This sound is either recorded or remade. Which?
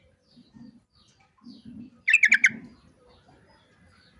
recorded